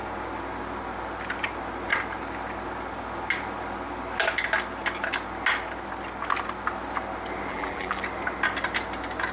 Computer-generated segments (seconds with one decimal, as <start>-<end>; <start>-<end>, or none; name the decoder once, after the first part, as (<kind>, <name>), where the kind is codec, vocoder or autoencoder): 7.5-8.0 (vocoder, BigVGAN v2)